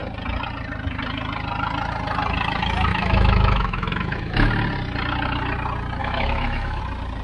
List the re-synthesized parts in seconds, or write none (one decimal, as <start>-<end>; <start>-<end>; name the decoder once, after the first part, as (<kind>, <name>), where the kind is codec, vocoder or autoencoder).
2.9-4.5 (autoencoder, DAC-VAE); 6.0-6.8